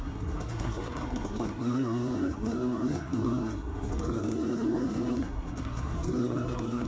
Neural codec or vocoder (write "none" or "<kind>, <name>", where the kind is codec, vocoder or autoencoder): codec, SNAC